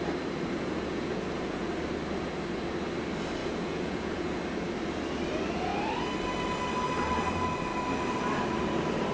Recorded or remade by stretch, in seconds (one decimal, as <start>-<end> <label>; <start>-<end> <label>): 0.0-0.6 recorded; 0.6-1.7 remade; 1.7-3.4 recorded; 3.4-4.4 remade; 4.4-9.1 recorded